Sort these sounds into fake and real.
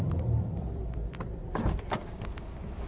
fake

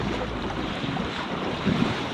fake